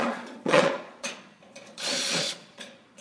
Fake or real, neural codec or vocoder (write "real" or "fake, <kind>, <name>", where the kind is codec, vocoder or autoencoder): fake, vocoder, Vocos